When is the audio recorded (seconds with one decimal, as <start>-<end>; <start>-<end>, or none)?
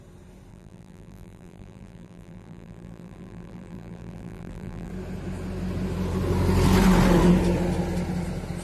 0.0-0.5; 4.9-8.6